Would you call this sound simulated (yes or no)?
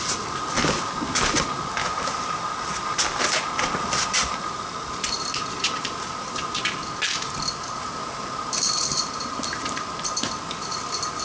no